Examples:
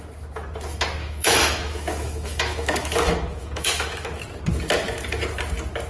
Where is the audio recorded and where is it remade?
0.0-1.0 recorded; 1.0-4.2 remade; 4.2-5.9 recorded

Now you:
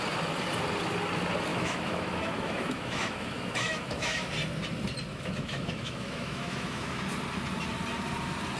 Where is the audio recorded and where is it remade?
0.0-1.5 recorded; 1.5-4.3 remade; 4.3-5.1 recorded; 5.1-7.0 remade; 7.0-8.6 recorded

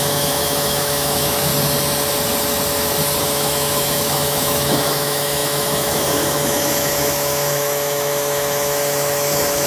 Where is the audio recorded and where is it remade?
0.0-1.5 remade; 1.5-3.2 recorded; 3.2-9.7 remade

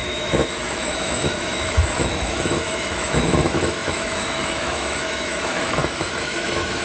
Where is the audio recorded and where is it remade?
0.0-6.8 remade

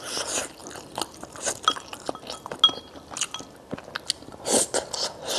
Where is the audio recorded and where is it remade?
0.0-5.4 recorded

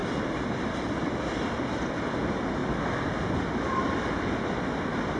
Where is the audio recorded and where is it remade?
0.0-5.2 recorded

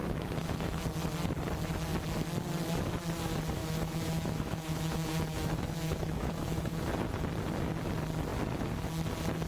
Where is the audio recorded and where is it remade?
0.0-0.8 remade; 0.8-3.6 recorded; 3.6-6.8 remade; 6.8-9.5 recorded

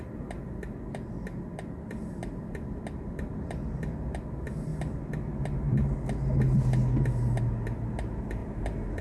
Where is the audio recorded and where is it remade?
0.0-9.0 recorded